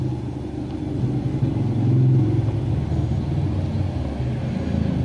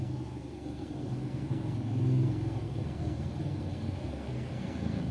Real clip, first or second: first